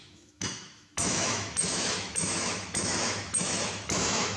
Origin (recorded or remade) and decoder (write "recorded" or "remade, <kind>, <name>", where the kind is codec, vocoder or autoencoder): remade, autoencoder, DAC-VAE